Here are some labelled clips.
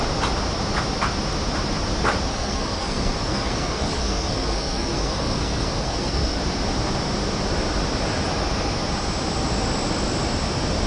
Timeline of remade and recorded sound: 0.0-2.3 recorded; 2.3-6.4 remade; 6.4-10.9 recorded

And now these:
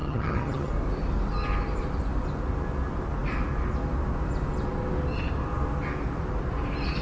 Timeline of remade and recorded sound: 0.0-0.7 remade; 0.7-7.0 recorded

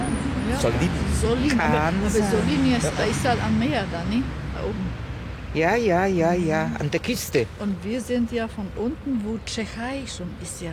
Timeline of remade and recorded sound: 0.0-0.9 recorded; 0.9-1.6 remade; 1.6-10.7 recorded

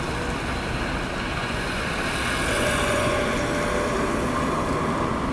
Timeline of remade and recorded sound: 0.0-1.4 recorded; 1.4-1.9 remade; 1.9-2.5 recorded; 2.5-3.4 remade; 3.4-5.3 recorded

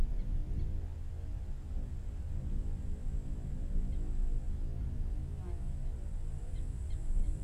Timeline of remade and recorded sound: 0.0-0.4 remade; 0.4-4.8 recorded; 4.8-5.2 remade; 5.2-6.3 recorded; 6.3-7.4 remade

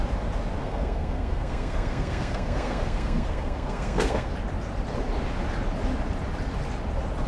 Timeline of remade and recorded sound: 0.0-0.6 recorded; 0.6-4.3 remade; 4.3-7.3 recorded

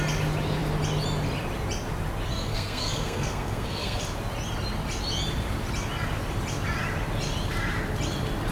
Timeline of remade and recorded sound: 0.0-2.3 recorded; 2.3-4.0 remade; 4.0-8.5 recorded

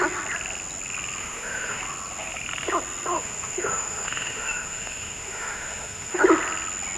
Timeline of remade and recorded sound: 0.0-1.2 recorded; 1.2-1.8 remade; 1.8-3.1 recorded; 3.1-6.2 remade; 6.2-7.0 recorded